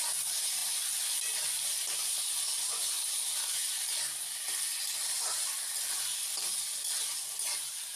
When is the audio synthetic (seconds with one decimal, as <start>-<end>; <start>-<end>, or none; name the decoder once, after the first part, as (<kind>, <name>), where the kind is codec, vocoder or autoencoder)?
none